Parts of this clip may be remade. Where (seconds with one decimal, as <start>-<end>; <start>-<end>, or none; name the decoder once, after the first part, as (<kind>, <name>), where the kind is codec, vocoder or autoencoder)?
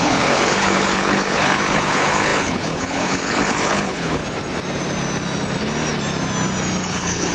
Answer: 0.0-4.2 (codec, HILCodec); 6.8-7.3